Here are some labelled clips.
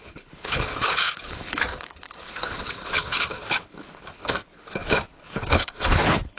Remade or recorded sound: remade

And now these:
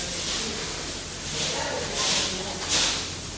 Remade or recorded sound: recorded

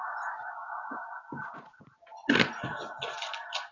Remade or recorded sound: recorded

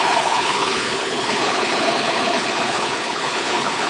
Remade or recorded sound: remade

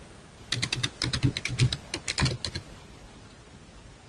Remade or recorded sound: recorded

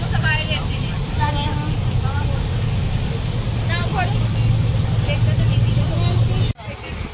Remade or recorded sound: recorded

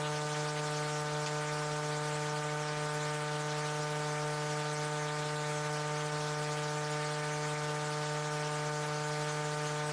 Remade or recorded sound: recorded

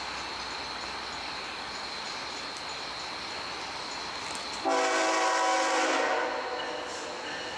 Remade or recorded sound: recorded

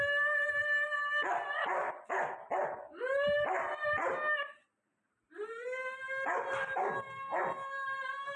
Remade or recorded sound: recorded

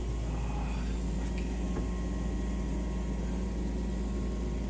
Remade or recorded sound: recorded